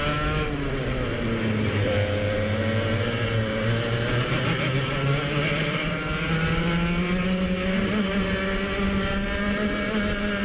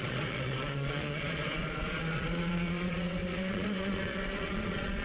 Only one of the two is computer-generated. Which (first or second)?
second